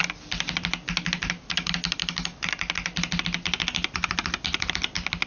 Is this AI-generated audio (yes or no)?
no